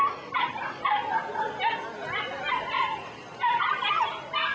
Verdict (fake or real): real